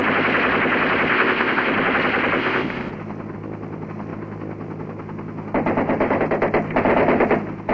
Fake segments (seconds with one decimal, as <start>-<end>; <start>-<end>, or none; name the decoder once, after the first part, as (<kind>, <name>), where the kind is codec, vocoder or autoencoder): 1.1-1.7 (codec, ZipCodec); 2.4-2.9

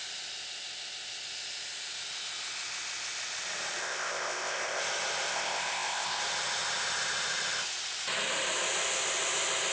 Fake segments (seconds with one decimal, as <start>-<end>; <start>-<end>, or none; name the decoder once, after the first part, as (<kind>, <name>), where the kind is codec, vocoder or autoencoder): 3.8-4.8 (codec, ZipCodec); 5.3-6.2

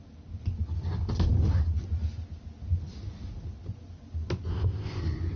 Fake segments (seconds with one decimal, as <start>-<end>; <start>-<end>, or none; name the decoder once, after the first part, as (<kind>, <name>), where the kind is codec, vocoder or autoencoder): 4.5-5.0 (codec, ZipCodec)

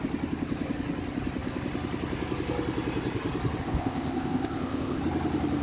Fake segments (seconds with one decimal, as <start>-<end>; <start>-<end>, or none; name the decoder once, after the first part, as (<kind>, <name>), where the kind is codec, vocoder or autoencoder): 3.6-5.0 (codec, ZipCodec)

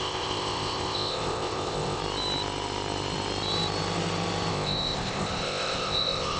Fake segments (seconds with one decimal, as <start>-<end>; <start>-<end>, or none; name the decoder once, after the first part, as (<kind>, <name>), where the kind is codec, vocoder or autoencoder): 0.0-2.0 (codec, ZipCodec); 4.5-6.4

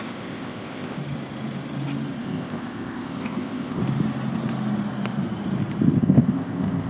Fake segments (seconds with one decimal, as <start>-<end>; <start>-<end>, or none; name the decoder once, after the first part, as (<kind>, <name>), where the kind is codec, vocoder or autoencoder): 0.0-1.0 (codec, ZipCodec); 2.2-3.8; 6.0-6.9

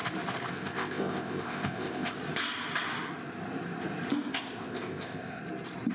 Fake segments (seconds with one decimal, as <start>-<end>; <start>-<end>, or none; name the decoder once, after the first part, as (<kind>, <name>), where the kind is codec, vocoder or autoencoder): 0.5-2.2 (codec, ZipCodec); 4.3-5.4

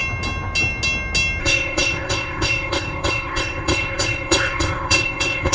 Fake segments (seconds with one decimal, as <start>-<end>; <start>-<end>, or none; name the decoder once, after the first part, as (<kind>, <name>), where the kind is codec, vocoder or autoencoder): 1.4-5.5 (codec, ZipCodec)